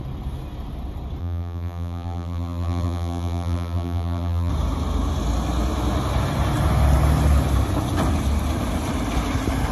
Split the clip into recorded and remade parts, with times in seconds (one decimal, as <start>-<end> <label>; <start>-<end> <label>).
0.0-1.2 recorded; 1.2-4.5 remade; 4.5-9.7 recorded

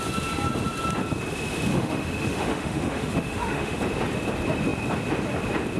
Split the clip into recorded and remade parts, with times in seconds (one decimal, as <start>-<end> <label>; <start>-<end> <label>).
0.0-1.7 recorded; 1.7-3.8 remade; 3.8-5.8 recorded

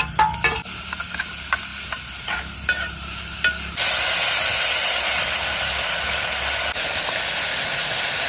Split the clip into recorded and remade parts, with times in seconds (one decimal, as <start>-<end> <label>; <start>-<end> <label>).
0.0-8.3 recorded

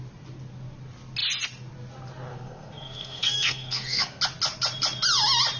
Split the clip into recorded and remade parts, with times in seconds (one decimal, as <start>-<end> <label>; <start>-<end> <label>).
0.0-2.3 recorded; 2.3-4.2 remade; 4.2-5.6 recorded

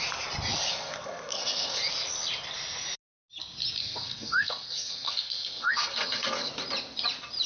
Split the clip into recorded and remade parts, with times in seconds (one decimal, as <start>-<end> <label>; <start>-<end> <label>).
0.0-0.7 recorded; 0.7-1.8 remade; 1.8-3.8 recorded; 3.8-6.5 remade; 6.5-7.5 recorded

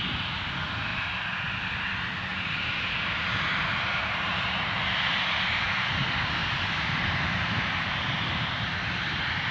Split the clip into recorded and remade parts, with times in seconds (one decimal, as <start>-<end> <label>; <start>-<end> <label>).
0.0-2.3 recorded; 2.3-5.9 remade; 5.9-6.4 recorded; 6.4-9.0 remade; 9.0-9.5 recorded

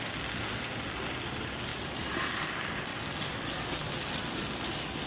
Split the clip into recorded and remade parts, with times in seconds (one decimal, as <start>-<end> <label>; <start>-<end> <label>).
0.0-5.1 recorded